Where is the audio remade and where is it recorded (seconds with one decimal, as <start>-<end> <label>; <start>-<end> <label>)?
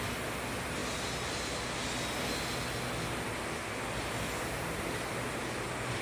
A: 0.0-6.0 recorded